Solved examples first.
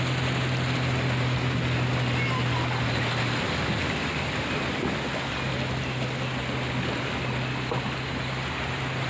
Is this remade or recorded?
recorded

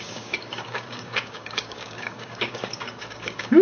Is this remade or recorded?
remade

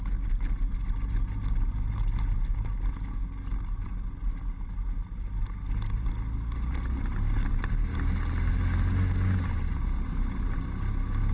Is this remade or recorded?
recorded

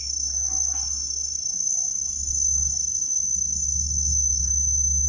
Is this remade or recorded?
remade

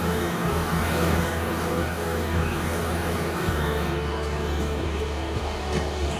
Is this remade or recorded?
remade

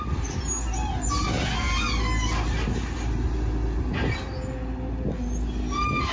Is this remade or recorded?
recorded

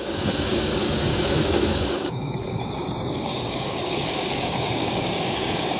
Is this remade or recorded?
remade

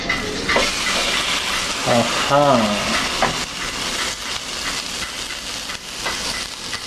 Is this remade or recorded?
recorded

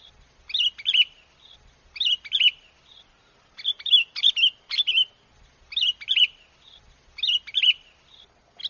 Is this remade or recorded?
recorded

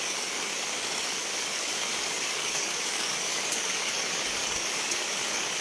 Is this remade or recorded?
remade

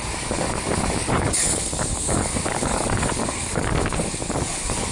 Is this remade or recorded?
remade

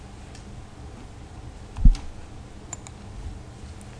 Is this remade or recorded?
recorded